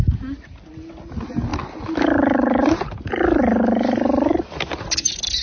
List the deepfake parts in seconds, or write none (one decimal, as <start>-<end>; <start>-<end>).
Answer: none